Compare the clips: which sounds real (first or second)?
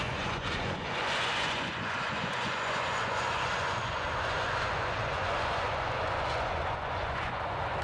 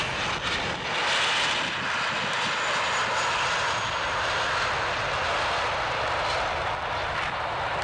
second